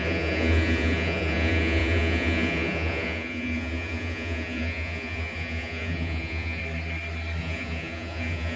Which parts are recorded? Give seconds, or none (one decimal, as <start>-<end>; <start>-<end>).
6.6-7.4

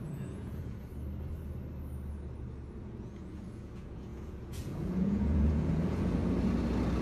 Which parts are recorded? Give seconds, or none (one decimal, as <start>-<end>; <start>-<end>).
0.9-2.8; 6.2-7.0

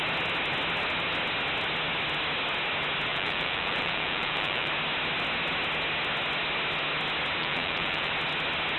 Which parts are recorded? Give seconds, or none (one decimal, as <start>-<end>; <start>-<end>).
0.0-3.1; 4.7-7.4; 8.1-8.8

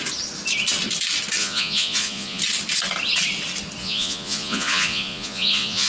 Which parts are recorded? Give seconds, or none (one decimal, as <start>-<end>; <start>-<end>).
0.0-1.4; 2.4-3.8

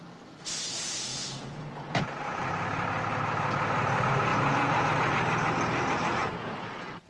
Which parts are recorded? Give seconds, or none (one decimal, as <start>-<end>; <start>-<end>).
0.0-1.1; 2.4-4.3; 4.9-6.2

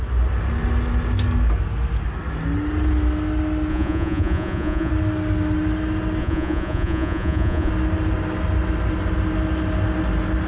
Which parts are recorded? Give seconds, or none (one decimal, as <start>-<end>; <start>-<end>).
0.0-3.7; 4.9-6.2; 7.7-10.5

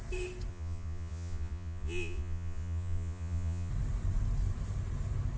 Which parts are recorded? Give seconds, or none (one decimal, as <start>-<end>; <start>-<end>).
0.0-0.5; 3.7-5.4

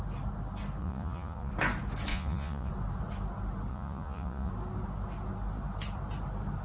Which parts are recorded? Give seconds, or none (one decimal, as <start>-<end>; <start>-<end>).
0.0-0.8; 1.5-2.1; 2.7-3.7; 4.5-6.6